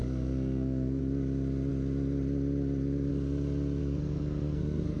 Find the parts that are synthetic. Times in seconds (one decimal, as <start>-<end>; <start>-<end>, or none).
0.0-1.0; 3.8-5.0